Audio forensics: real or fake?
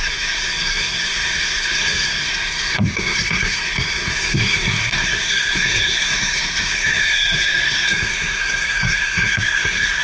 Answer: fake